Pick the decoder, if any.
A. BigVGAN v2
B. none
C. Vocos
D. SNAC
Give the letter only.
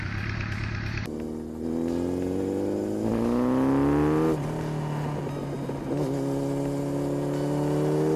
B